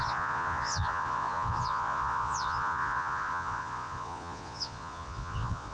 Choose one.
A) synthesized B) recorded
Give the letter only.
A